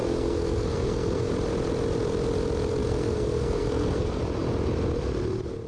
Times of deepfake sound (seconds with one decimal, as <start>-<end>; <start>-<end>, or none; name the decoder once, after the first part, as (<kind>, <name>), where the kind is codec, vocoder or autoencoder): 0.0-1.3 (codec, SNAC); 2.8-4.2